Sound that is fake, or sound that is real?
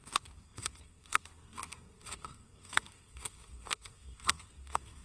fake